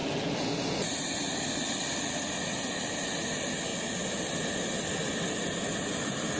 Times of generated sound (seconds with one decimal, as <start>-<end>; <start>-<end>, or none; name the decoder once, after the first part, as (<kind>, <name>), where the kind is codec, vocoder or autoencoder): 0.0-6.4 (vocoder, BigVGAN v2)